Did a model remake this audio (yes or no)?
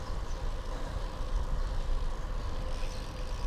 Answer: no